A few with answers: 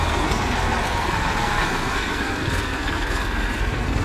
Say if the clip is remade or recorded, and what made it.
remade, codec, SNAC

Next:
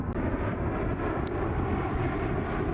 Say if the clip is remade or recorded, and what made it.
recorded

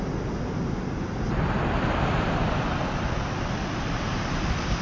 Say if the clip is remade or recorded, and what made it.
recorded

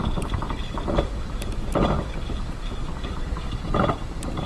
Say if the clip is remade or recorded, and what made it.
recorded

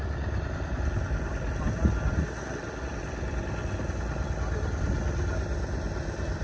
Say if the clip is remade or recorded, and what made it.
recorded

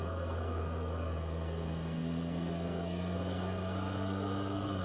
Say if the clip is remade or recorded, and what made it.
remade, codec, SNAC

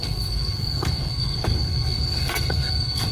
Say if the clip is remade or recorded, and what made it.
remade, codec, SNAC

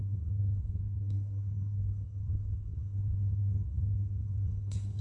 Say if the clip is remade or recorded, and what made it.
remade, codec, SNAC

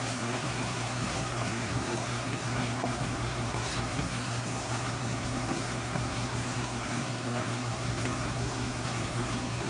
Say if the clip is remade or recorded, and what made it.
remade, codec, SNAC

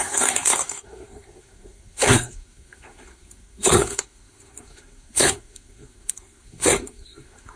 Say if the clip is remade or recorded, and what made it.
remade, codec, SNAC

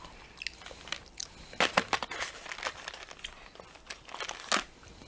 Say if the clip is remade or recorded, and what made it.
recorded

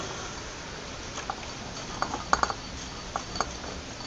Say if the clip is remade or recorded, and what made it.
recorded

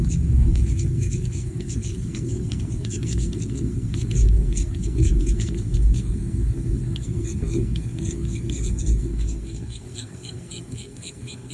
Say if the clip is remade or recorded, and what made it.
remade, codec, SNAC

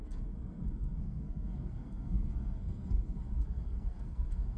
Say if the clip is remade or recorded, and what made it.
remade, codec, SNAC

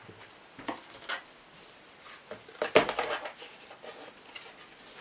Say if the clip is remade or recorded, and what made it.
recorded